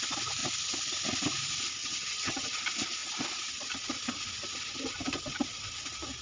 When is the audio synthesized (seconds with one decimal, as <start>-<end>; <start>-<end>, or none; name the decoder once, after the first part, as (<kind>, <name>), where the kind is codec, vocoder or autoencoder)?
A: 1.8-2.6 (vocoder, HiFi-GAN)